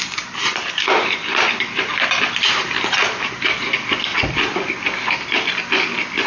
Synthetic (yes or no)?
yes